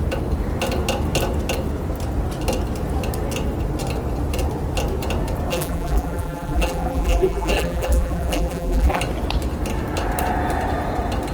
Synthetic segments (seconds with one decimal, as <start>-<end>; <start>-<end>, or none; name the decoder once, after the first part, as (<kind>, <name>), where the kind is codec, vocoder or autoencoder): 5.5-9.0 (vocoder, BigVGAN v2)